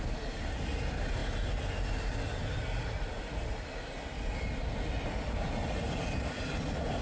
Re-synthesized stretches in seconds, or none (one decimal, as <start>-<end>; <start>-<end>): none